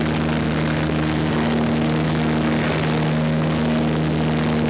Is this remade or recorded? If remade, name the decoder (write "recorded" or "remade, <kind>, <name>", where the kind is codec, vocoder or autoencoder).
recorded